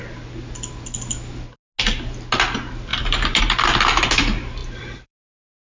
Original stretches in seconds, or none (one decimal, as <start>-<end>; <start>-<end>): 0.0-2.9; 3.4-4.6